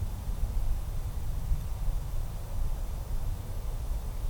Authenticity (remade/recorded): recorded